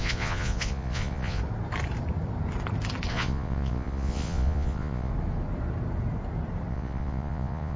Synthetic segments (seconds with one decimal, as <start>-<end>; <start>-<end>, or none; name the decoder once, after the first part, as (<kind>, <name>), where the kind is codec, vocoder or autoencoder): 0.0-1.4 (vocoder, Vocos); 3.1-5.1; 6.7-7.8